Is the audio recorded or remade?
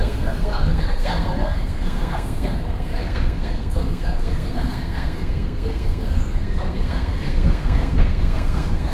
remade